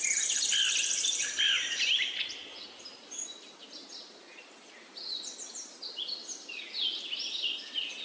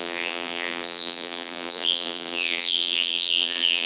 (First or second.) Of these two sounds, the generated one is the second